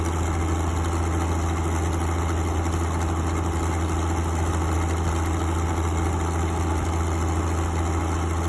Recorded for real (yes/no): yes